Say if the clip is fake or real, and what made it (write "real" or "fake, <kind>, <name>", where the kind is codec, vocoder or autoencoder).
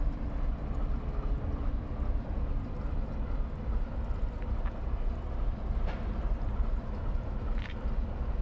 fake, vocoder, BigVGAN v2